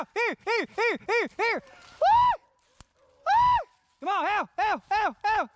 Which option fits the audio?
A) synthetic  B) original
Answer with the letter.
B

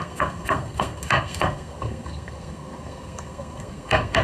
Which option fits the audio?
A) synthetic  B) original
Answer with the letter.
A